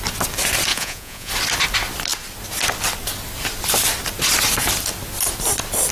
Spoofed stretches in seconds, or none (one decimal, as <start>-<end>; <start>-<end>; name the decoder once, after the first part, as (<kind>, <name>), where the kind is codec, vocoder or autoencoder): 0.7-1.3 (vocoder, Vocos)

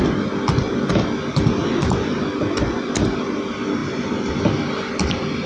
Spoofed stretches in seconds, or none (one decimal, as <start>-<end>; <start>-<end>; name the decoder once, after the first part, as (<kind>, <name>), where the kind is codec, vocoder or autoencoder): 3.8-4.4 (vocoder, BigVGAN v2)

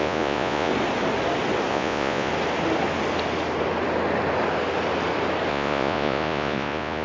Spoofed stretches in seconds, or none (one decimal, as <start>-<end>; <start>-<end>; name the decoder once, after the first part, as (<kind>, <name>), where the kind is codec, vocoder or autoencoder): 0.0-0.7 (vocoder, Vocos); 1.7-2.3; 5.5-7.0

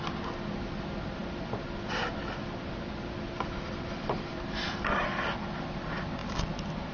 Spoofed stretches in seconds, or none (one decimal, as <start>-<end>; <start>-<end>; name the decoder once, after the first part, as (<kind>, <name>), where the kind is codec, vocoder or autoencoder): none

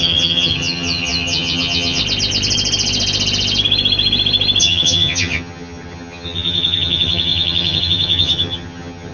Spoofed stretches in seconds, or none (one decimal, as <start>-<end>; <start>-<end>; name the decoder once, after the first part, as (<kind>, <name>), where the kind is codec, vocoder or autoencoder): 0.0-2.0 (vocoder, HiFi-GAN); 4.6-9.1